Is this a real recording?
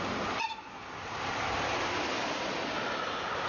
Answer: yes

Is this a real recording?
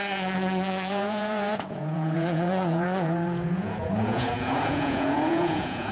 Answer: no